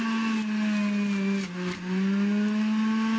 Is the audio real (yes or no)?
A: yes